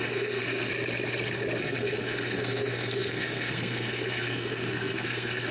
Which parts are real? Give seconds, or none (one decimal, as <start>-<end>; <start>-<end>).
0.7-1.6